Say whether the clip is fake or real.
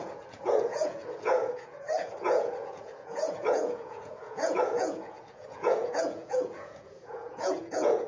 fake